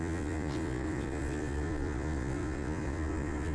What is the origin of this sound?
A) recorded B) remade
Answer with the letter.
B